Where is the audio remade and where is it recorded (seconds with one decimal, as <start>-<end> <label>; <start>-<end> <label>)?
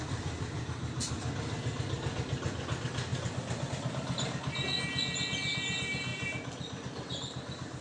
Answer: 0.0-6.1 recorded; 6.1-7.8 remade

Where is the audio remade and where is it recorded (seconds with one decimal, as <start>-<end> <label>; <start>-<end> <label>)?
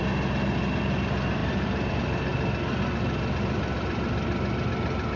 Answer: 0.0-5.2 recorded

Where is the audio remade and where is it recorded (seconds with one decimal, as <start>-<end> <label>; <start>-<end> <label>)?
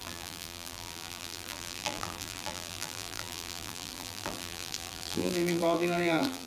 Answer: 0.0-6.5 remade